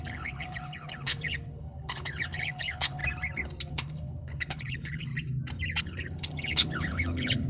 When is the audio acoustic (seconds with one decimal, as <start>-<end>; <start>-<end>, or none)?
3.0-3.7; 5.1-5.8